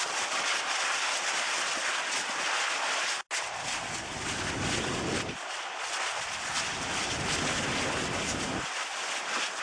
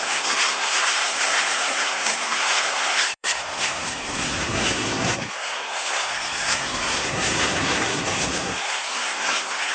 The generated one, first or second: second